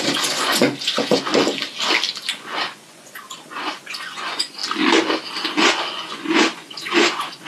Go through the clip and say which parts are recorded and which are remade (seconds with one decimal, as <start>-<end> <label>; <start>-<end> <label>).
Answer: 0.0-1.3 remade; 1.3-2.3 recorded; 2.3-4.6 remade; 4.6-5.5 recorded; 5.5-7.5 remade